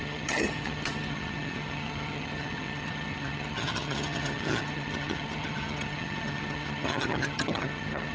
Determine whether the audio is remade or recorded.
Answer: remade